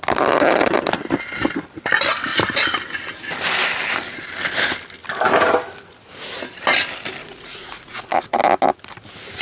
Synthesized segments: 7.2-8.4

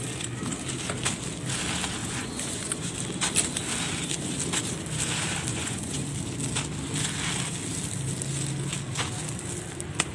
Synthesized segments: 2.0-2.9; 5.5-6.0

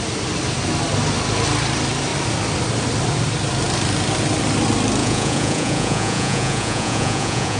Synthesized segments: 5.0-7.6

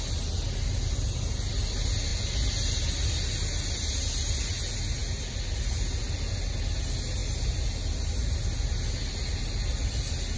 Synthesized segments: none

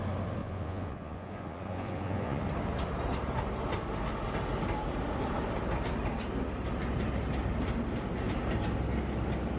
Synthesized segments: 0.4-2.4

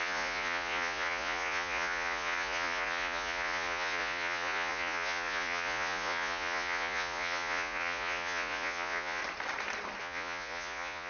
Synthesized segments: 0.0-9.2; 10.0-11.1

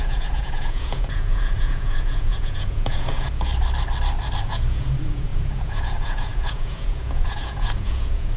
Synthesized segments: 0.0-3.5; 4.4-8.4

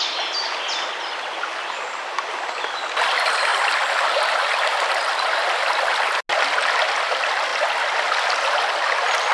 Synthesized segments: none